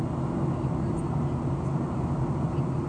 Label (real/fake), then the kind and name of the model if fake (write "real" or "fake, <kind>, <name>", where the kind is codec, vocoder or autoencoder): real